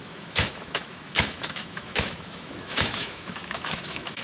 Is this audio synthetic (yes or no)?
yes